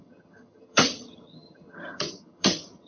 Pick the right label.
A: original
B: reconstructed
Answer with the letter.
B